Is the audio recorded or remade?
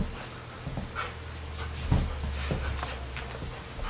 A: recorded